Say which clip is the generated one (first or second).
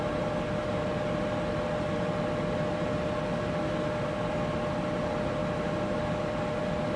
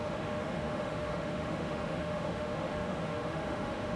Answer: second